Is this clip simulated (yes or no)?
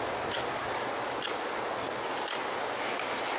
no